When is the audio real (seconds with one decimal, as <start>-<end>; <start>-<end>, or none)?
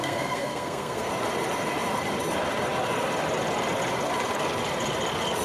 1.1-5.4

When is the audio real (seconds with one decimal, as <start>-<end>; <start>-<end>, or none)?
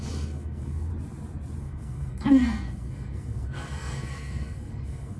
0.9-1.6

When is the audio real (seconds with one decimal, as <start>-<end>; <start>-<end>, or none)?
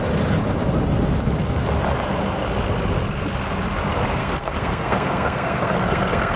0.0-4.2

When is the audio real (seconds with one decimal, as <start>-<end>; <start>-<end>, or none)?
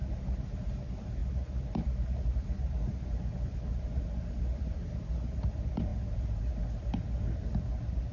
0.0-8.1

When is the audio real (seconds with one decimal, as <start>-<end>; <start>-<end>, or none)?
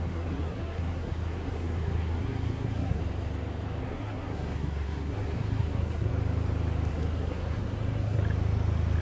3.0-3.8; 6.1-6.9; 8.2-9.0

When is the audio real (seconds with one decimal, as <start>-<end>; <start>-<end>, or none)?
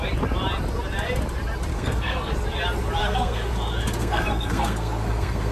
0.0-1.7; 2.3-3.0; 3.5-4.0